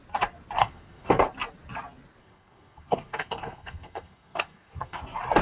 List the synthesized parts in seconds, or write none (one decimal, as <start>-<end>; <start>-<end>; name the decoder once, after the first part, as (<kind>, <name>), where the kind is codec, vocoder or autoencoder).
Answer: 0.6-1.1 (codec, SNAC); 2.2-5.0